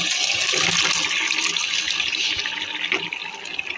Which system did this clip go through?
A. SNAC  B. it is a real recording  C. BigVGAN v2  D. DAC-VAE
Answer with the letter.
B